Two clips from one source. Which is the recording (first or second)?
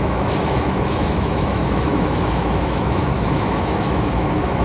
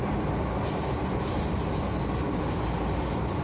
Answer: second